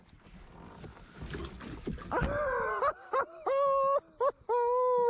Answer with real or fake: real